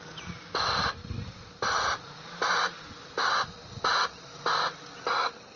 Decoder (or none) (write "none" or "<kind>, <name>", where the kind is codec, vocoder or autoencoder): none